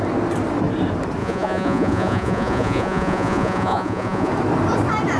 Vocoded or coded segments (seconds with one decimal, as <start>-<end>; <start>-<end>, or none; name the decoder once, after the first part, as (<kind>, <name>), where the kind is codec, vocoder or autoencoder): 1.2-4.3 (vocoder, Vocos)